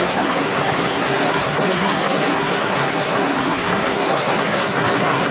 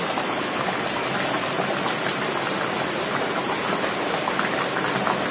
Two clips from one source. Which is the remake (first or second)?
first